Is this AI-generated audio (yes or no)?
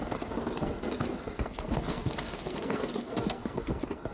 yes